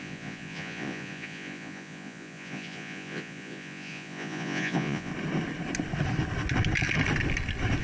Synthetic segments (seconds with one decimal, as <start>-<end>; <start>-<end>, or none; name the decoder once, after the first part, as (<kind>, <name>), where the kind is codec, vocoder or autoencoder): 0.0-5.1 (vocoder, Vocos)

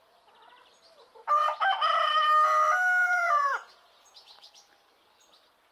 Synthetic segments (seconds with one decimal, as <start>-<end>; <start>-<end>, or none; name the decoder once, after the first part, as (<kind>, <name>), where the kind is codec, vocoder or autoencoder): 3.0-4.5 (vocoder, Vocos)

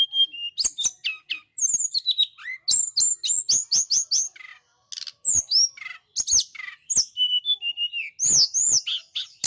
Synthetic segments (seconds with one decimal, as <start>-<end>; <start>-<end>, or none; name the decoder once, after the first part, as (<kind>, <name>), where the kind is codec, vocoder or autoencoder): none